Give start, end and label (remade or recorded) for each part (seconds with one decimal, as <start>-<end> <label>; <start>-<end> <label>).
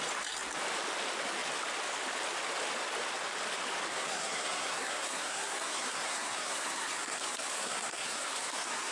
0.0-3.9 recorded; 3.9-8.9 remade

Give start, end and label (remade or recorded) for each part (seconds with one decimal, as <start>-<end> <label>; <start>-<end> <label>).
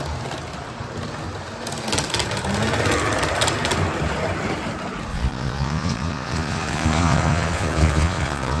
0.0-5.1 recorded; 5.1-8.6 remade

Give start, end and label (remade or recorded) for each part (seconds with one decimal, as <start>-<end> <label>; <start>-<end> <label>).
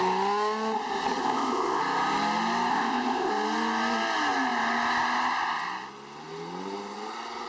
0.0-1.2 recorded; 1.2-1.8 remade; 1.8-2.7 recorded; 2.7-3.3 remade; 3.3-7.5 recorded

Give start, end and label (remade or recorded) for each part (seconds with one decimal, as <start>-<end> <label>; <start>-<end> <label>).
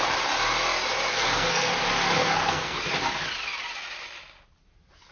0.0-1.1 recorded; 1.1-1.7 remade; 1.7-2.2 recorded; 2.2-2.8 remade; 2.8-5.1 recorded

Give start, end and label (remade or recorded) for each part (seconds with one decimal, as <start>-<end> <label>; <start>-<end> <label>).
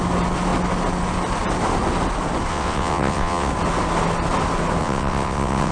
0.0-2.5 recorded; 2.5-3.5 remade; 3.5-4.8 recorded; 4.8-5.7 remade